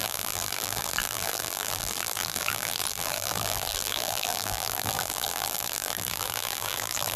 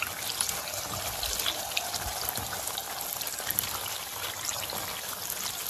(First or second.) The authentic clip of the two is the second